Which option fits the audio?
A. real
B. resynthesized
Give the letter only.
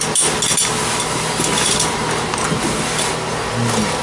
A